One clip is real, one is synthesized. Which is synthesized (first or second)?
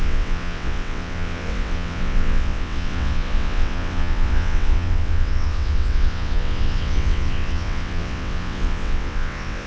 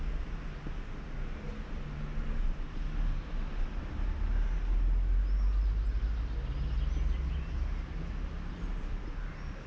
first